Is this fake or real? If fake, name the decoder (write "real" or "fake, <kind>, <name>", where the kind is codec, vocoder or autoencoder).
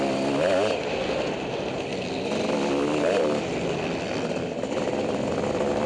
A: real